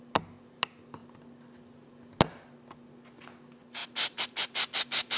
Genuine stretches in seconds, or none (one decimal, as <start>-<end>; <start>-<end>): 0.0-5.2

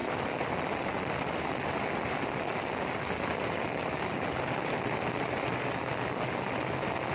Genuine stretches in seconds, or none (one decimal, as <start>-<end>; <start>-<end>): 0.0-7.1

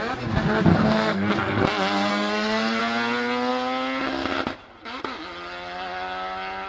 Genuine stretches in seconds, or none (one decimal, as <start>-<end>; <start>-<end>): 0.0-0.7; 1.3-2.1; 2.8-6.7

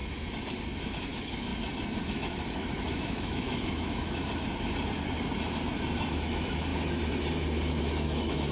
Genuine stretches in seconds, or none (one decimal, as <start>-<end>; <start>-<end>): 0.0-0.8; 1.5-2.0; 4.2-6.1; 6.7-7.8